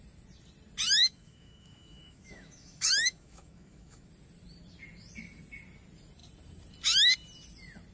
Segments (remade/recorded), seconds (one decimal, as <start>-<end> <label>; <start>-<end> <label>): 0.0-1.0 recorded; 1.0-4.1 remade; 4.1-7.9 recorded